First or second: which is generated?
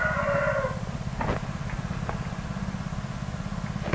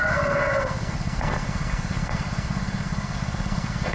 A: second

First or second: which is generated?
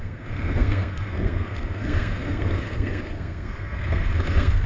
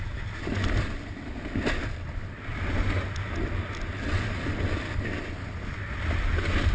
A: first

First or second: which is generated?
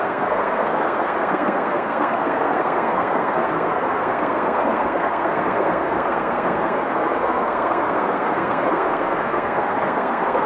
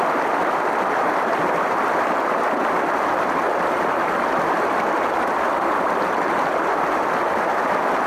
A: first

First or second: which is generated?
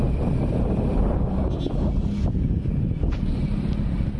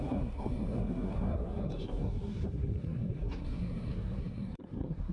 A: second